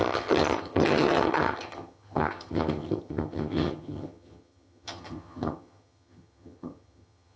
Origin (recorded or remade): remade